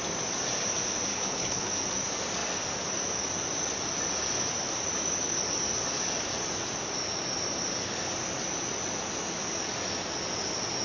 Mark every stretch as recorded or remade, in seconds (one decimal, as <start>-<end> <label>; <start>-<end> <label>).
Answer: 0.0-1.1 recorded; 1.1-1.7 remade; 1.7-10.8 recorded